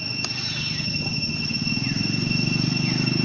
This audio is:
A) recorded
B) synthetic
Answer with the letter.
A